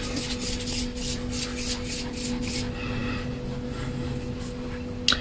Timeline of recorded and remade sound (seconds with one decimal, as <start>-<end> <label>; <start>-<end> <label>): 0.0-5.2 recorded